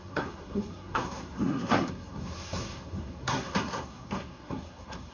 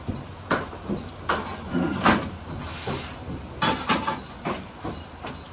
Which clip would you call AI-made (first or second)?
first